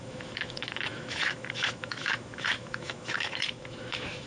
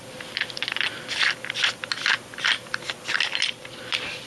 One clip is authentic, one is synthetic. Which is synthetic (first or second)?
first